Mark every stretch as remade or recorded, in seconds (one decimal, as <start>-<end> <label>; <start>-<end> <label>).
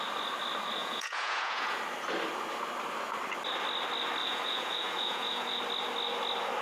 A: 0.0-0.8 recorded; 0.8-1.8 remade; 1.8-4.2 recorded; 4.2-5.6 remade; 5.6-6.6 recorded